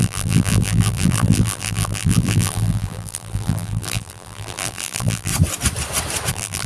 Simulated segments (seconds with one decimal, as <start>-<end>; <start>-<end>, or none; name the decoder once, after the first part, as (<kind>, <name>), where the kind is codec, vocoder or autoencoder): 0.0-5.3 (vocoder, BigVGAN v2); 6.3-6.7